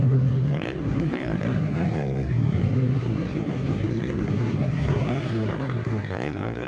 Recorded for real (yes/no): no